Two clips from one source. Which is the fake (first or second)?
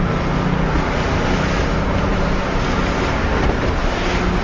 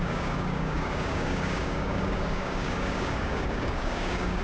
second